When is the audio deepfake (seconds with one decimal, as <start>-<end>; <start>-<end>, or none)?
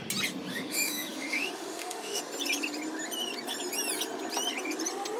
0.5-2.2